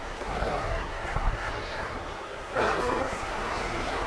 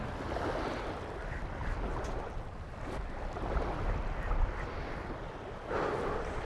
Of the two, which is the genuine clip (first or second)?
second